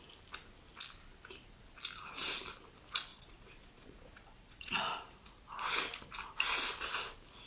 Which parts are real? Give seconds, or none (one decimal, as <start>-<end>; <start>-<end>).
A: 0.0-3.1; 4.8-7.5